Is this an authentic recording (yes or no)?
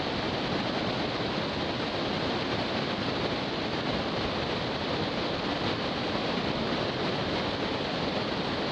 yes